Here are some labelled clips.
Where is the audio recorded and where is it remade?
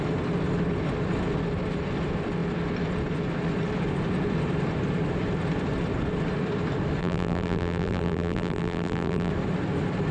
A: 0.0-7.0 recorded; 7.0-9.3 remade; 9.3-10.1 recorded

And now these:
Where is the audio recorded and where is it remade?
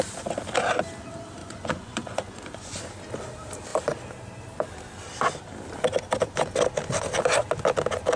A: 0.0-1.4 recorded; 1.4-2.8 remade; 2.8-8.2 recorded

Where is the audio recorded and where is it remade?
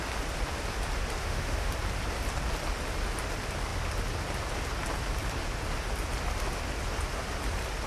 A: 0.0-1.2 recorded; 1.2-1.7 remade; 1.7-7.9 recorded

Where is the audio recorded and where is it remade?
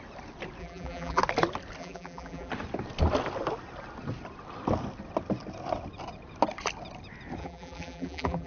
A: 0.0-0.6 recorded; 0.6-1.2 remade; 1.2-1.8 recorded; 1.8-2.5 remade; 2.5-7.4 recorded; 7.4-8.5 remade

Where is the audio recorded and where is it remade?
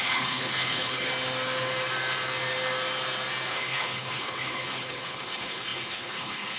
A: 0.0-1.1 remade; 1.1-3.5 recorded; 3.5-6.6 remade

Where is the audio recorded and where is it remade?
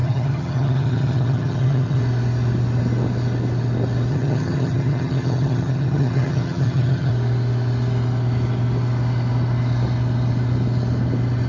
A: 0.0-2.0 remade; 2.0-4.1 recorded; 4.1-7.1 remade; 7.1-11.5 recorded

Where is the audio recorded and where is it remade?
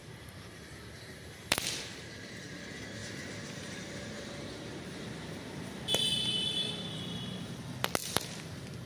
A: 0.0-2.1 remade; 2.1-3.0 recorded; 3.0-7.5 remade; 7.5-8.0 recorded; 8.0-8.9 remade